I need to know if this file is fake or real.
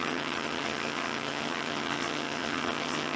fake